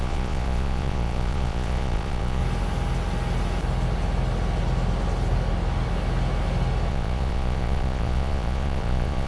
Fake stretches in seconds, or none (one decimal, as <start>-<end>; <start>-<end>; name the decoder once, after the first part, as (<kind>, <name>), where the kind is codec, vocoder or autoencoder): 0.0-2.4 (vocoder, Vocos); 6.9-9.3